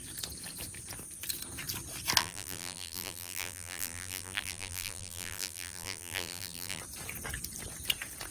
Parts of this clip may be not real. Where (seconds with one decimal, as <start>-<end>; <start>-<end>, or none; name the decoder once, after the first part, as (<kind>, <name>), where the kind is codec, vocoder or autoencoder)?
2.2-6.8 (vocoder, BigVGAN v2)